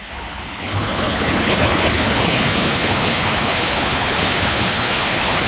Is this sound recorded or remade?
remade